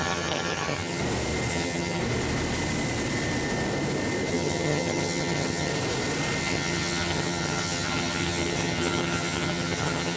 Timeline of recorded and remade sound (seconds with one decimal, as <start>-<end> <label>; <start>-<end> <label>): 0.0-1.0 remade; 1.0-1.5 recorded; 1.5-2.0 remade; 2.0-4.3 recorded; 4.3-5.7 remade; 5.7-6.4 recorded; 6.4-10.2 remade